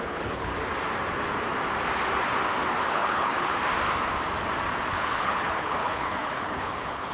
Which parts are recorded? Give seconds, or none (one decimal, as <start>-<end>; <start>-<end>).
0.5-2.9; 3.5-4.9